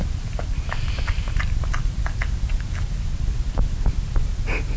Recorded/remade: recorded